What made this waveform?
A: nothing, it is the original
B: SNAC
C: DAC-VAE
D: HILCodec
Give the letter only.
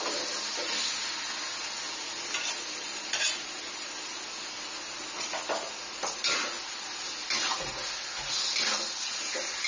A